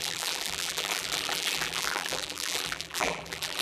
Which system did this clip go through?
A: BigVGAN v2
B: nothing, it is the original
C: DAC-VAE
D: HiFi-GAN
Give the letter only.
A